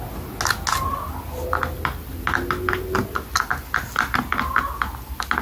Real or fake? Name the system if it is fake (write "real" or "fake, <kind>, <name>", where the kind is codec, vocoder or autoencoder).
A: real